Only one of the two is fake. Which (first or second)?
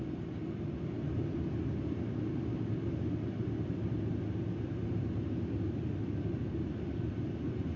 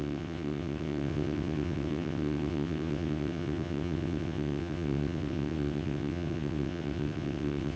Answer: second